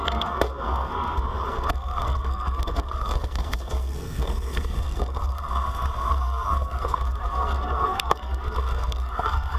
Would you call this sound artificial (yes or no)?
yes